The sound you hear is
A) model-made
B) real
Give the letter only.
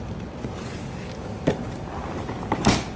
B